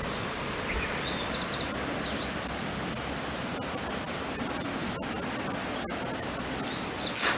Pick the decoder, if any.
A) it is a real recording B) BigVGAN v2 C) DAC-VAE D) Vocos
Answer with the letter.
A